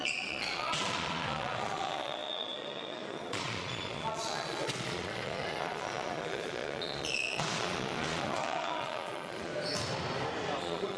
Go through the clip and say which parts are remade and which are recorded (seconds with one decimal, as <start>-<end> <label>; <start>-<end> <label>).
0.0-9.5 remade; 9.5-10.6 recorded; 10.6-11.0 remade